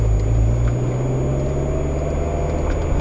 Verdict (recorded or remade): recorded